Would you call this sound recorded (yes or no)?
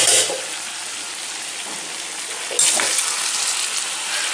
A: yes